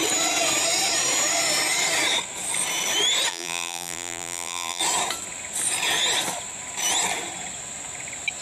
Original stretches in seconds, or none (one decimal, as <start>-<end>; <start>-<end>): 0.0-3.3; 4.8-8.4